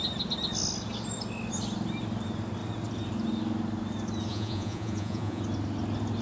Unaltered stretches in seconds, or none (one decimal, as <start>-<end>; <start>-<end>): 0.0-4.3; 5.4-6.2